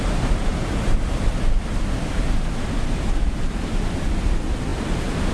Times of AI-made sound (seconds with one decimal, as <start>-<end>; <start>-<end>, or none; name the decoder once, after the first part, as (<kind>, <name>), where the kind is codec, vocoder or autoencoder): none